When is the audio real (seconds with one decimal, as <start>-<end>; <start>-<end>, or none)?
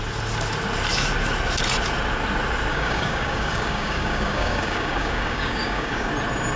0.0-2.7; 6.1-6.6